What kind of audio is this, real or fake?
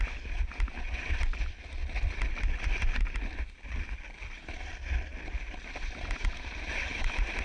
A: real